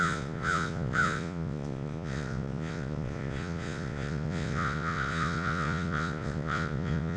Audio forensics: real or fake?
fake